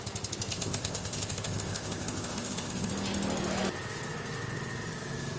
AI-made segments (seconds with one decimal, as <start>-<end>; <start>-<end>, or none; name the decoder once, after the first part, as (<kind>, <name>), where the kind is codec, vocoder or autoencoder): 0.5-2.9 (codec, ZipCodec)